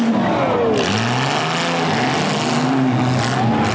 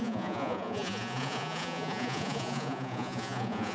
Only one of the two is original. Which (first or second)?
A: first